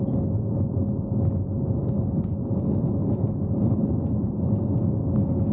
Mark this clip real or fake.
real